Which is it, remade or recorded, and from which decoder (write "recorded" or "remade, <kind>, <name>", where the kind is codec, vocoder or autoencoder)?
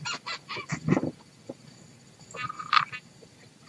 recorded